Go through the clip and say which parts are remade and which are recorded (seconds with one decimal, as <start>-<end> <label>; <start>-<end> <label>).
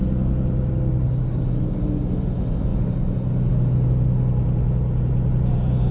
0.0-5.9 recorded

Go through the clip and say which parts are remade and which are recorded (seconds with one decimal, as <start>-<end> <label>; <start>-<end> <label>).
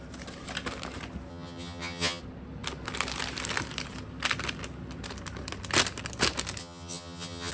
0.0-1.3 recorded; 1.3-2.2 remade; 2.2-6.6 recorded; 6.6-7.5 remade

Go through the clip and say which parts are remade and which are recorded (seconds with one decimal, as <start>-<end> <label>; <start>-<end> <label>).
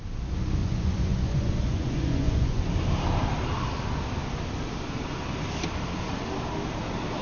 0.0-0.6 recorded; 0.6-2.6 remade; 2.6-7.2 recorded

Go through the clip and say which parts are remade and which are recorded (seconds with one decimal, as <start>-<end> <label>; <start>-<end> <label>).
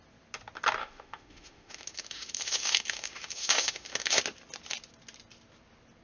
0.0-0.8 recorded; 0.8-4.2 remade; 4.2-6.0 recorded